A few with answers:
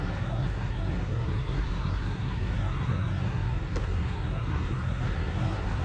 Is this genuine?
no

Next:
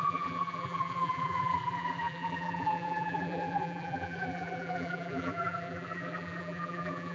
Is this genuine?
no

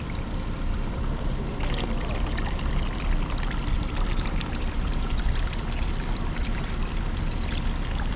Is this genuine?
no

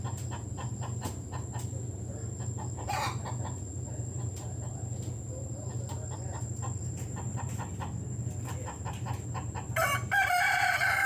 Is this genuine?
yes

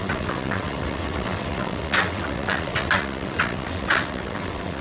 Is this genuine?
no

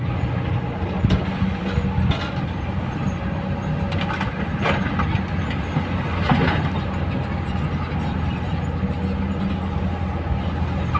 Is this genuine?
yes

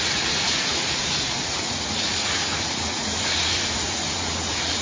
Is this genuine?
no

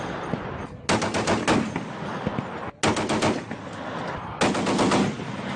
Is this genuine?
yes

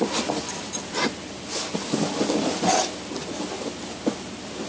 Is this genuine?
yes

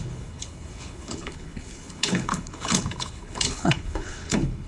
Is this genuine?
no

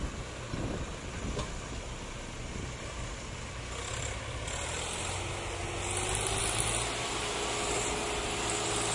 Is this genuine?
yes